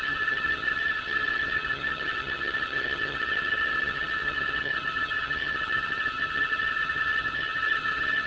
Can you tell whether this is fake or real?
fake